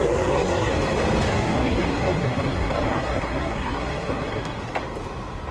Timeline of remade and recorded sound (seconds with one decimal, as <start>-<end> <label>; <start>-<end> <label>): 0.0-0.7 remade; 0.7-1.3 recorded; 1.3-4.6 remade; 4.6-5.5 recorded